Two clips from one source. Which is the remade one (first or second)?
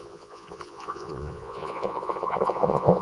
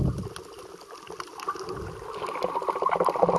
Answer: first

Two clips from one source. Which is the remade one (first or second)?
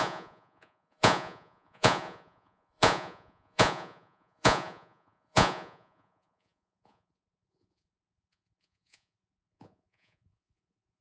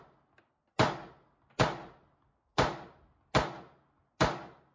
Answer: first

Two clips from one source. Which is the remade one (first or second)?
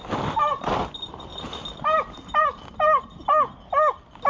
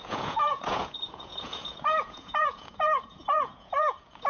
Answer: second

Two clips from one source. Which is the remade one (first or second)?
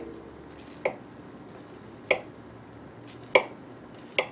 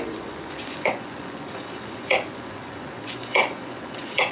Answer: second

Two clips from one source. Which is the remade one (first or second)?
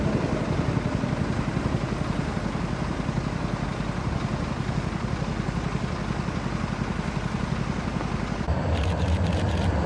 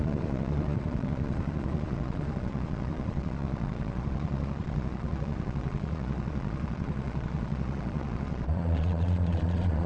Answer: second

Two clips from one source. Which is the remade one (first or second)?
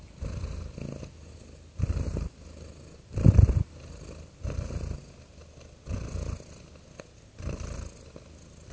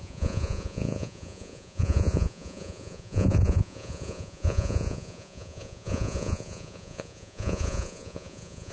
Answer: second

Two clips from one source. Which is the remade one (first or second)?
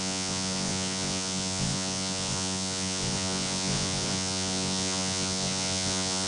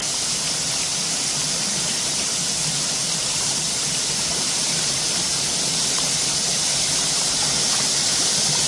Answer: first